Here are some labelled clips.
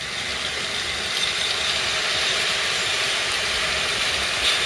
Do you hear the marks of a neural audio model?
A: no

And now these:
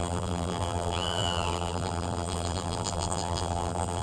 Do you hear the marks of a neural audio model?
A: yes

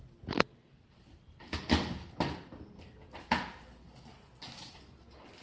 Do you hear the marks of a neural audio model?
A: no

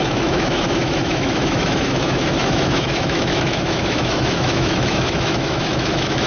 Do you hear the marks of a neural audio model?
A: yes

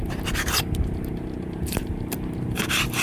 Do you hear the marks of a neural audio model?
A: yes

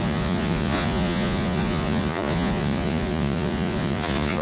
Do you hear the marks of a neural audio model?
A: yes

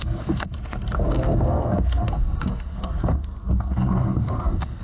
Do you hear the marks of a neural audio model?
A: yes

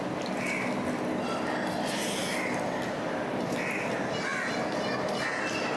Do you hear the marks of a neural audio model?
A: no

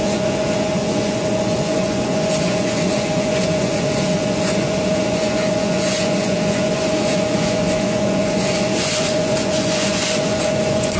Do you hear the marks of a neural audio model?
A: yes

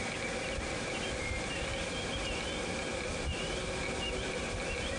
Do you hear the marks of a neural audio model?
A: no